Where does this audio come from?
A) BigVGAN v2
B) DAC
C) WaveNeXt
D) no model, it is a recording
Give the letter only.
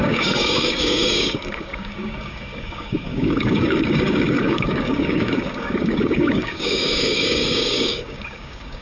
B